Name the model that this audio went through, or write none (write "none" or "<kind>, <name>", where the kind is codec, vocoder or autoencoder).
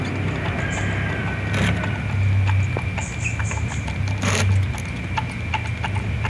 none